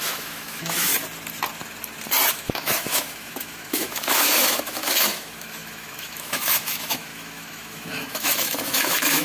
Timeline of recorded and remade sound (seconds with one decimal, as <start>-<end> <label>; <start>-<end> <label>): 0.0-0.9 remade; 0.9-2.3 recorded; 2.3-9.2 remade